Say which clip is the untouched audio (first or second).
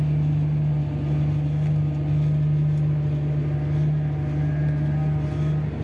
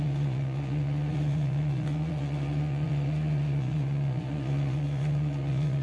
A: first